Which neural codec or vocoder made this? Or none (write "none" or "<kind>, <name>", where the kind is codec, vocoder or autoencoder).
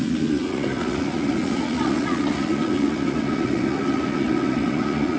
vocoder, Vocos